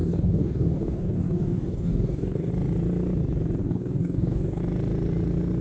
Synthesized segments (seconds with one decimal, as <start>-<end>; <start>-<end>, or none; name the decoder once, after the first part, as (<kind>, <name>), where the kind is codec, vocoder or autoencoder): 0.0-2.5 (codec, DAC); 3.6-4.6